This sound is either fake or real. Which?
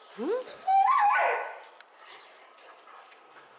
real